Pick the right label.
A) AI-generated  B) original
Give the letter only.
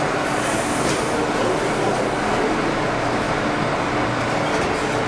B